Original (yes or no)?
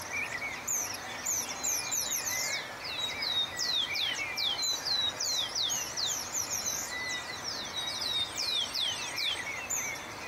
yes